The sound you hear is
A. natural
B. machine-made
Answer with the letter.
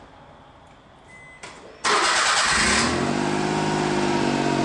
A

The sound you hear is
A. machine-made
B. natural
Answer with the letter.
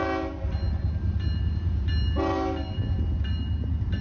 B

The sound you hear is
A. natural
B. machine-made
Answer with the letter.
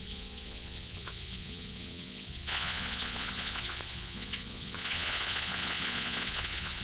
B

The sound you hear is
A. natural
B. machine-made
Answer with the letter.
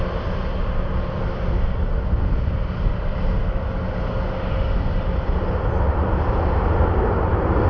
A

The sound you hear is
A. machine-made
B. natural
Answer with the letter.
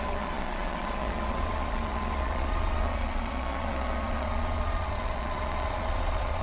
A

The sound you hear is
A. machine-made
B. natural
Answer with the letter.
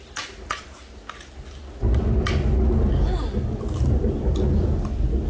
B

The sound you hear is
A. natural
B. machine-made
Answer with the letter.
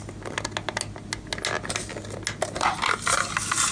A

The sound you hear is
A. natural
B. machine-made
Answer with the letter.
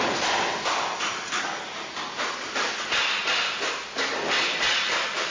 A